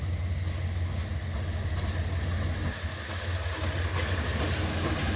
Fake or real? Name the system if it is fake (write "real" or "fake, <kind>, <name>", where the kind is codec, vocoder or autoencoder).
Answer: real